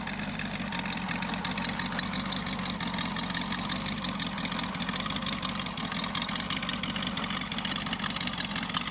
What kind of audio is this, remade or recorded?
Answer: recorded